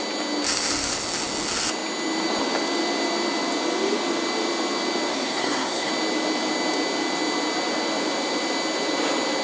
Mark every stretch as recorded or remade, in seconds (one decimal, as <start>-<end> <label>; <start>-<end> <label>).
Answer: 0.0-5.1 recorded; 5.1-5.9 remade; 5.9-9.4 recorded